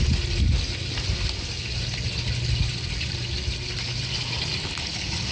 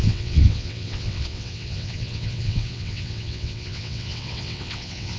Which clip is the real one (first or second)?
first